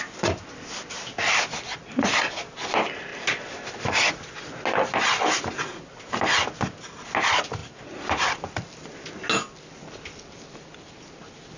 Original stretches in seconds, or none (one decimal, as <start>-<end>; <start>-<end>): 0.0-3.1; 4.1-7.6; 8.8-11.6

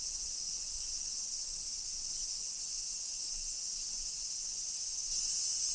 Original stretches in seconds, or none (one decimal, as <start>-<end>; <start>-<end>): 0.0-2.2

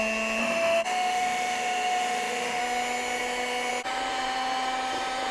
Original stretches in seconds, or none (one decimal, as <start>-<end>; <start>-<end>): 0.0-0.4; 2.6-5.3

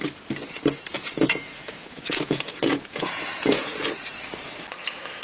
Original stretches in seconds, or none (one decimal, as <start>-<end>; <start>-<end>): 0.0-0.9; 3.6-5.2

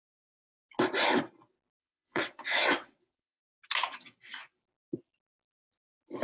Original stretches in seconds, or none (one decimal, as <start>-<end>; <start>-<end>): 0.0-1.8; 3.4-6.2